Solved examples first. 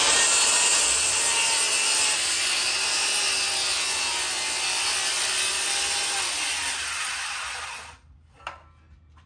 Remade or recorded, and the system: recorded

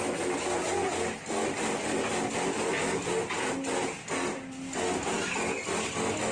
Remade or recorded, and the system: recorded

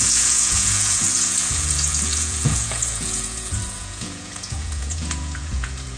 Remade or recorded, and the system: remade, vocoder, Vocos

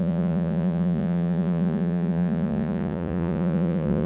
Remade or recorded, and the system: remade, vocoder, Vocos